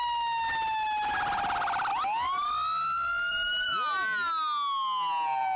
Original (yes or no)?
yes